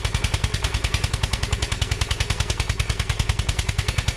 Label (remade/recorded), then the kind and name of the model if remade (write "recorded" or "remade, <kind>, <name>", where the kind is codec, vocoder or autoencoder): remade, codec, SNAC